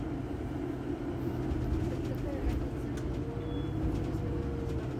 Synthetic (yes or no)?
no